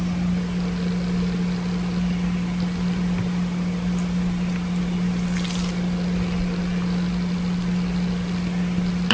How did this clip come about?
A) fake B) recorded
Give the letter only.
B